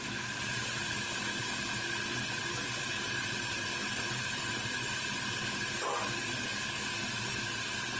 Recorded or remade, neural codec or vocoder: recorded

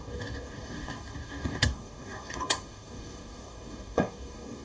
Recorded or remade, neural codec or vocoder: remade, codec, DAC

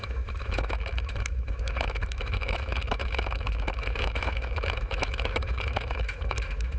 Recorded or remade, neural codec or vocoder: remade, autoencoder, DAC-VAE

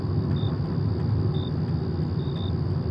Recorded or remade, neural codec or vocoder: recorded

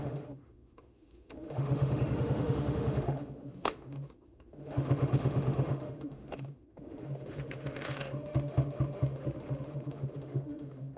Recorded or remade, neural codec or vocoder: remade, autoencoder, DAC-VAE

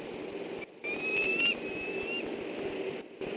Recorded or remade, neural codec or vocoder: recorded